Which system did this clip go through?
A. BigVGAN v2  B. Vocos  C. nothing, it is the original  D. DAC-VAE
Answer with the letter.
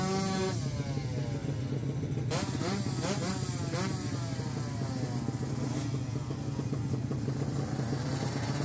C